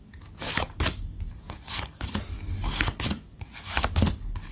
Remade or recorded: remade